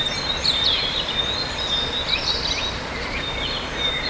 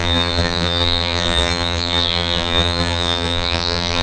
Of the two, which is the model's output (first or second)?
second